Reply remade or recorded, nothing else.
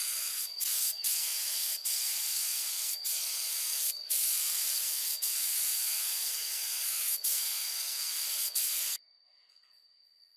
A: remade